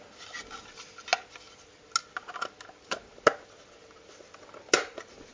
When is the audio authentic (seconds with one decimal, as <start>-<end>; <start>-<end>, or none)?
0.0-5.3